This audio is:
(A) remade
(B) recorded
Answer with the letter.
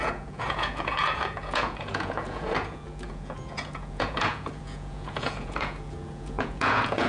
A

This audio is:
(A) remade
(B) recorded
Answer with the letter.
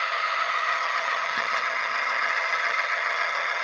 A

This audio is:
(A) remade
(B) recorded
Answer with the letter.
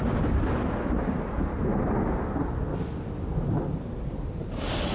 B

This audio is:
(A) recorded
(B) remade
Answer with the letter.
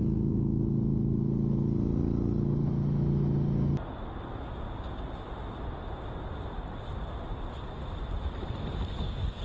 A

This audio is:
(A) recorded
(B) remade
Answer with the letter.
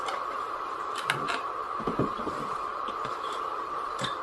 B